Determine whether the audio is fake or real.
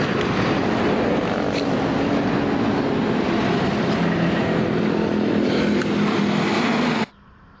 real